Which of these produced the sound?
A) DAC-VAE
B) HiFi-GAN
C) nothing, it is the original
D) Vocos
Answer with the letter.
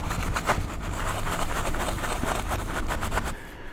C